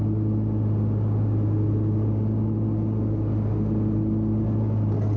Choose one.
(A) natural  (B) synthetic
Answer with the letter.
A